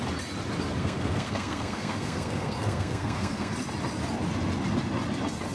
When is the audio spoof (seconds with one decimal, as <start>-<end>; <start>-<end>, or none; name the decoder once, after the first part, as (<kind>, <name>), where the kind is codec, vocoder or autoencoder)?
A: 0.8-3.5 (codec, SNAC)